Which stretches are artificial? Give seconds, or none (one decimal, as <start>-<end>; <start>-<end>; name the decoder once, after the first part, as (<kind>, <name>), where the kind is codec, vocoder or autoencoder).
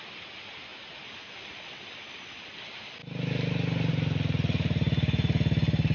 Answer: none